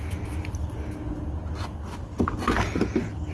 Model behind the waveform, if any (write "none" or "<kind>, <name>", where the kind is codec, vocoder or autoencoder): none